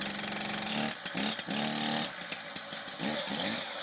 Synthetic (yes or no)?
no